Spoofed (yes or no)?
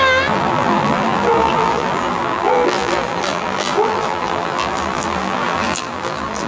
yes